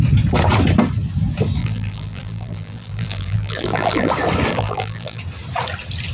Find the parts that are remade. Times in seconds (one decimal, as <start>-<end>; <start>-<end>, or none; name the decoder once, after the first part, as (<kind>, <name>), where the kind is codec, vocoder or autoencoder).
1.6-4.1 (vocoder, BigVGAN v2); 4.5-5.2